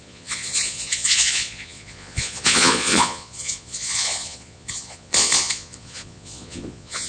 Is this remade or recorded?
remade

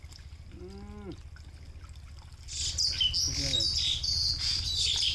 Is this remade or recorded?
recorded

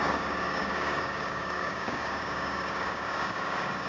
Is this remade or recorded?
remade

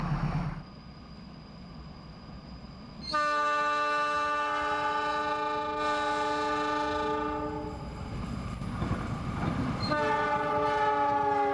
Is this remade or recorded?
recorded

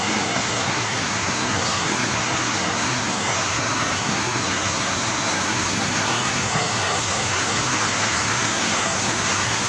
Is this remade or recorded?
remade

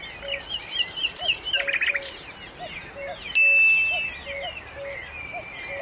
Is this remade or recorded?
recorded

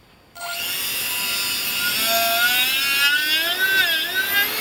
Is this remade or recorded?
recorded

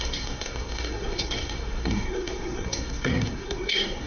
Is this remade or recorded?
remade